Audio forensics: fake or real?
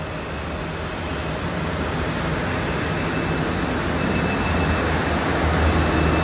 real